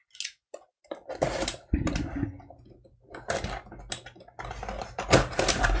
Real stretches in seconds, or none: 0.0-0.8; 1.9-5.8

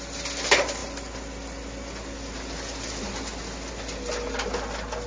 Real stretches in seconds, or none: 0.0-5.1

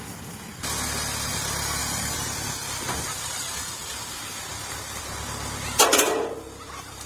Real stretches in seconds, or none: 0.0-7.1

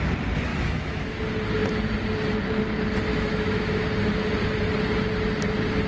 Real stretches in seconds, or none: 0.0-0.5; 1.2-3.1; 3.8-5.9

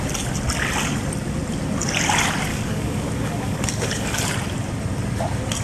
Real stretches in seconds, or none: 0.0-2.5; 4.2-5.6

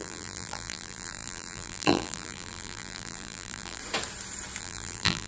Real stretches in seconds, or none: 3.8-4.6

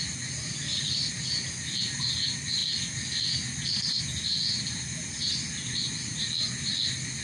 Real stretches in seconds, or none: 0.0-7.2

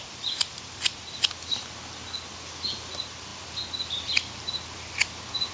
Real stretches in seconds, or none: 0.0-5.5